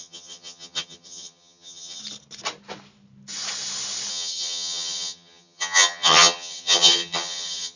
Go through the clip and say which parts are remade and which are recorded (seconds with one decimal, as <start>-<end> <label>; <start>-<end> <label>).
0.0-2.0 remade; 2.0-4.1 recorded; 4.1-7.8 remade